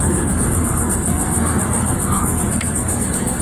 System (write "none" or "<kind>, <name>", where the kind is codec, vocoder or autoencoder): codec, SNAC